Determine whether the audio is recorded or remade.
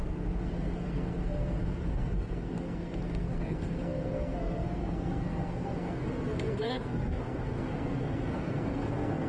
remade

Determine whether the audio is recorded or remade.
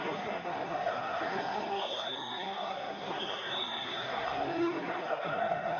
remade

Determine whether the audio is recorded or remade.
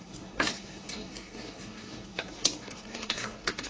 remade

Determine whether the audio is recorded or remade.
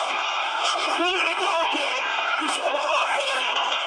remade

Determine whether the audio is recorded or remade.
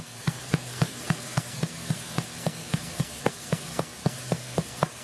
remade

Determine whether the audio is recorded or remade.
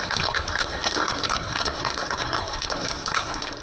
remade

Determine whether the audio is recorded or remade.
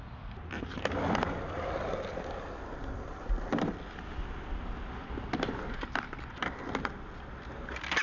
recorded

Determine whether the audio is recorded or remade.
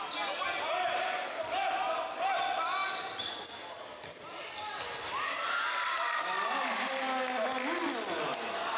recorded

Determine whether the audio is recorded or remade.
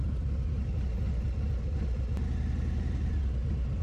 recorded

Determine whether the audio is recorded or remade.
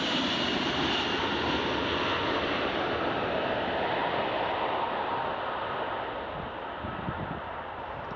recorded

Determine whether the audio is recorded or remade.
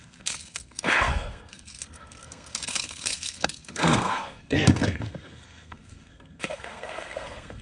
remade